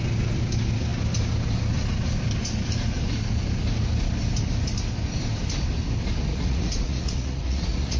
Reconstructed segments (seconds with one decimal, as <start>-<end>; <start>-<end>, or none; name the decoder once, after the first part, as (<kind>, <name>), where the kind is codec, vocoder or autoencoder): 6.3-8.0 (vocoder, Vocos)